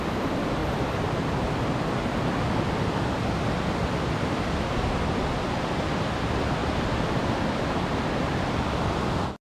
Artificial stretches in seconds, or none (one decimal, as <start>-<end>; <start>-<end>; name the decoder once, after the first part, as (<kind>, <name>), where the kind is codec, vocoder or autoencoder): none